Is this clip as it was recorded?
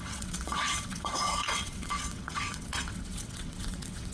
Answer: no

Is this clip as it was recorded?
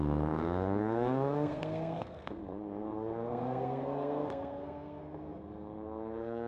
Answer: no